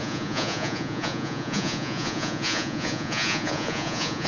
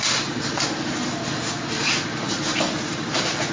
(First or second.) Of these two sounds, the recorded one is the second